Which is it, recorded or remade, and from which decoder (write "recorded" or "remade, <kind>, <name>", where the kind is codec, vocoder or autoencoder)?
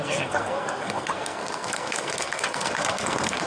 remade, codec, SNAC